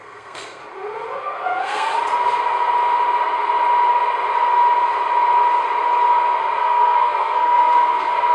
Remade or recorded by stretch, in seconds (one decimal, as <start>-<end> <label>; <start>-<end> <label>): 0.0-0.6 remade; 0.6-1.2 recorded; 1.2-1.9 remade; 1.9-6.6 recorded; 6.6-8.3 remade